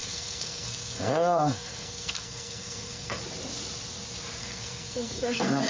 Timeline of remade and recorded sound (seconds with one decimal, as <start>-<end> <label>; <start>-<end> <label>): 0.0-3.2 remade; 3.2-4.4 recorded; 4.4-5.7 remade